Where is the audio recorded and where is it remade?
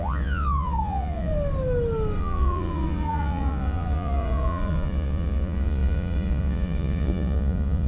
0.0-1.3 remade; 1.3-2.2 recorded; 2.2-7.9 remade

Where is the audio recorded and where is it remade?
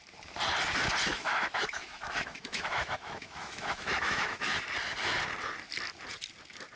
0.0-1.1 recorded; 1.1-4.6 remade; 4.6-6.8 recorded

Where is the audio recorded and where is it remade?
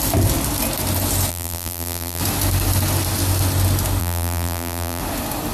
0.0-1.3 recorded; 1.3-2.2 remade; 2.2-4.0 recorded; 4.0-5.0 remade; 5.0-5.5 recorded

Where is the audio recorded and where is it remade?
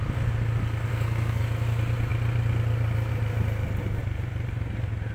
0.0-0.9 recorded; 0.9-1.4 remade; 1.4-5.1 recorded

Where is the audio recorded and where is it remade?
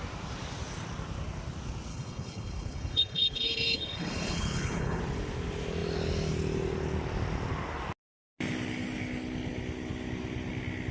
0.0-1.9 recorded; 1.9-5.0 remade; 5.0-10.9 recorded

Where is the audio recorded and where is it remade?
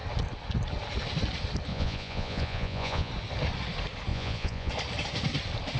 0.0-1.7 recorded; 1.7-3.1 remade; 3.1-4.1 recorded; 4.1-4.7 remade; 4.7-5.8 recorded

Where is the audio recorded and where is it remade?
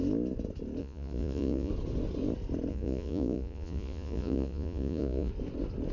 0.0-0.8 recorded; 0.8-1.7 remade; 1.7-2.7 recorded; 2.7-5.3 remade; 5.3-5.9 recorded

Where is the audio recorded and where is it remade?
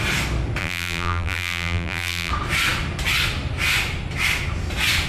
0.0-0.6 recorded; 0.6-2.3 remade; 2.3-5.1 recorded